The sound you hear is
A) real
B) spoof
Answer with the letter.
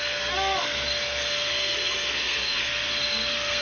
B